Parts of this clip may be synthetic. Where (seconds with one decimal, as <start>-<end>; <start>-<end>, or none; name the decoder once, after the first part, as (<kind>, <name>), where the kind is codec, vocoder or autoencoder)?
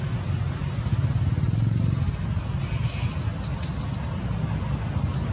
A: none